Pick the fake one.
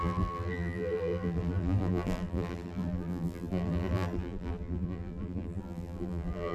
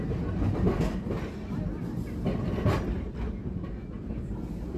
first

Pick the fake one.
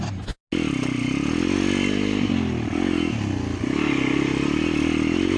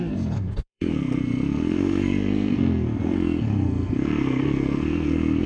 second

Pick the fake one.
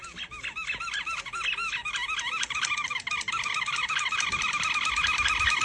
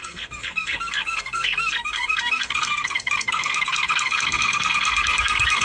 second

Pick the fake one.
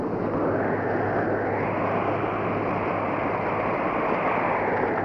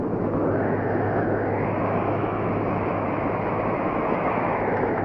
second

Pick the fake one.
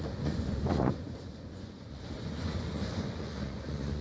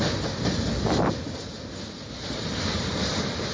first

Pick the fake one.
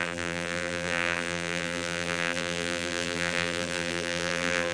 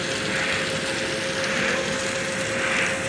first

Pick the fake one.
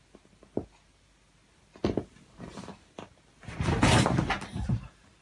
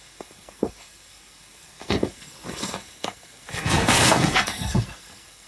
second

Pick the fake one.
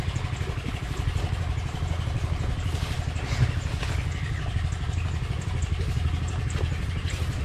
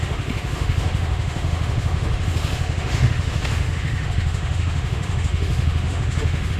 second